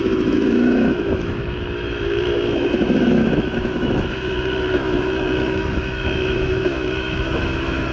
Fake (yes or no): yes